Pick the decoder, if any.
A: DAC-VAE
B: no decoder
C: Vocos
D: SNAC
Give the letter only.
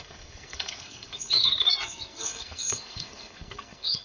D